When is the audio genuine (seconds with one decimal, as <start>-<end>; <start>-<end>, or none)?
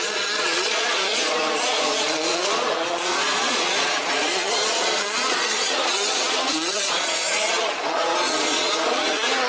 none